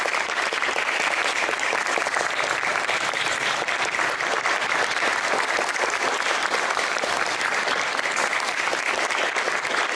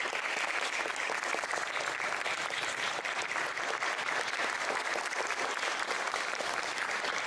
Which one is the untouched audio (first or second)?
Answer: second